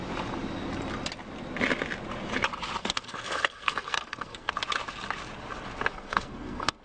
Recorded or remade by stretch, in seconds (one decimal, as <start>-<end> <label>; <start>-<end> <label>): 0.0-2.8 recorded; 2.8-4.5 remade; 4.5-5.9 recorded; 5.9-6.8 remade